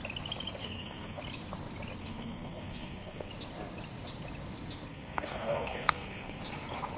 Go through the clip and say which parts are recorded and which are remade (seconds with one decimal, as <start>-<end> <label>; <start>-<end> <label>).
0.0-0.6 recorded; 0.6-1.2 remade; 1.2-2.0 recorded; 2.0-3.3 remade; 3.3-4.9 recorded; 4.9-6.4 remade; 6.4-7.0 recorded